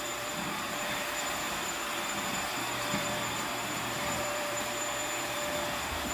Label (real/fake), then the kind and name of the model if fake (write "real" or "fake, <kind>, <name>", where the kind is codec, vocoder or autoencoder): fake, vocoder, BigVGAN v2